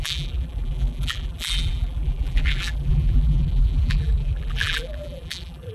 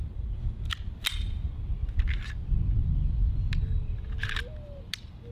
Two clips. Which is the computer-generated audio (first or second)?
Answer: first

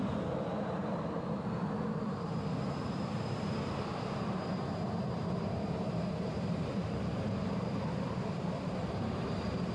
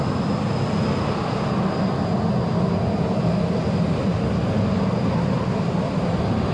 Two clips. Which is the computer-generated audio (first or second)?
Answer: first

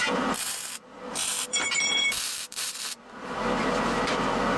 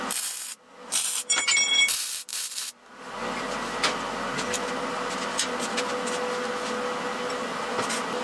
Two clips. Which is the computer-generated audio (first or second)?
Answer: first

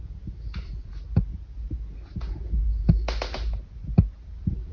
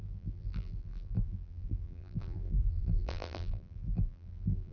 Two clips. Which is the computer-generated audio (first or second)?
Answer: second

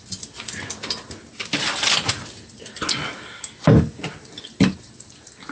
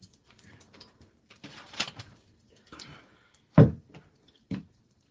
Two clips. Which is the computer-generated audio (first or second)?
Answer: second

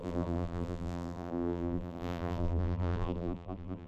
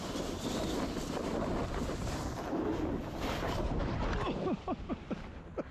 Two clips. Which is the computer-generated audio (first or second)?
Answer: first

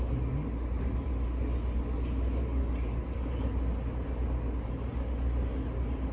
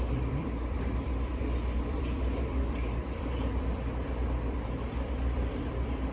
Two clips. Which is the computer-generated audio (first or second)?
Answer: second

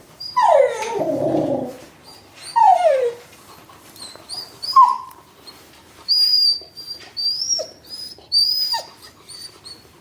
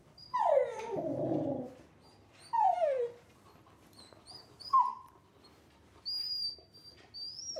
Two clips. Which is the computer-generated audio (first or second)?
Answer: first